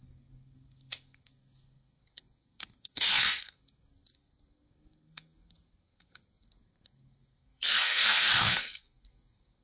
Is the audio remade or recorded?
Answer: remade